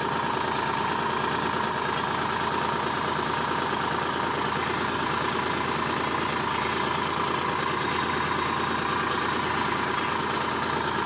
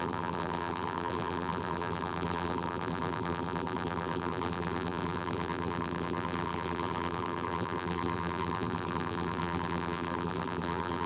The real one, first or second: first